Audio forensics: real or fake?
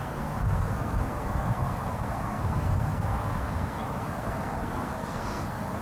fake